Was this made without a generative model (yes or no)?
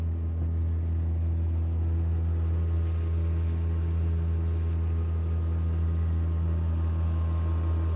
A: yes